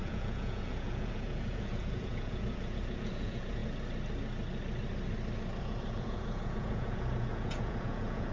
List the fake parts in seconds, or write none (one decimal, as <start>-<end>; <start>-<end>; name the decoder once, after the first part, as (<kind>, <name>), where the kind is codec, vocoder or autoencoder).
0.0-3.6 (vocoder, Vocos); 5.6-8.3